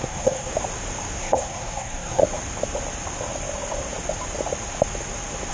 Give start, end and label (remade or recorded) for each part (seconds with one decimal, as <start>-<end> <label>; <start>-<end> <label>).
0.0-0.5 remade; 0.5-1.2 recorded; 1.2-2.2 remade; 2.2-5.5 recorded